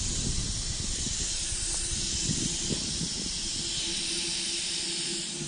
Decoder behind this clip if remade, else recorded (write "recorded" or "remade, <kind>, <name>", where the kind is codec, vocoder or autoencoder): recorded